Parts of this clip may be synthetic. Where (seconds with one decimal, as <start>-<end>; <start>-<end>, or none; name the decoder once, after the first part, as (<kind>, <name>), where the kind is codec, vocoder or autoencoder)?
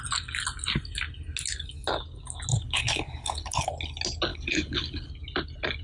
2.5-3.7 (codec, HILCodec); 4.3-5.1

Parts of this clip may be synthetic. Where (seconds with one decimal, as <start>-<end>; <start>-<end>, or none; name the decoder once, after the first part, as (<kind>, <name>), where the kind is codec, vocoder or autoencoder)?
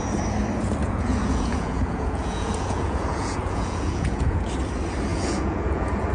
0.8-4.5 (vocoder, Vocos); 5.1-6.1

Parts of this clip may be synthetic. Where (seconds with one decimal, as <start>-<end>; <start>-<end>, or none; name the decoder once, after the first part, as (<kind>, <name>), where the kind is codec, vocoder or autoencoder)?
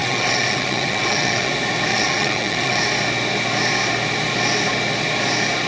0.0-1.5 (vocoder, WaveNeXt); 1.9-2.8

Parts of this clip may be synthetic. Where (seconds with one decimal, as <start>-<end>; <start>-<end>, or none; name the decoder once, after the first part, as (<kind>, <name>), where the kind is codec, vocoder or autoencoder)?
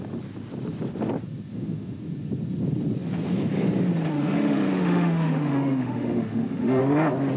1.5-2.0 (autoencoder, DAC-VAE); 4.1-6.8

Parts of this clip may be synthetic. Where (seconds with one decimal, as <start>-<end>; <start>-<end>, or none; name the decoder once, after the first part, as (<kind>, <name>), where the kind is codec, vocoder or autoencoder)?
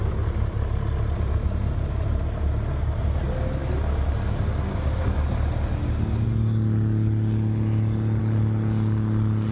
none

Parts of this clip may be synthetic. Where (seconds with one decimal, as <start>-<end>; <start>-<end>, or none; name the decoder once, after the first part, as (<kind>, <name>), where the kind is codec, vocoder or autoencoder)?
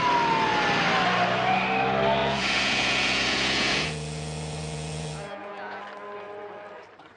2.2-5.8 (vocoder, Vocos)